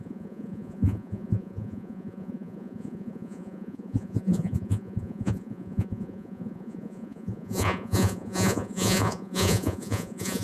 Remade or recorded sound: remade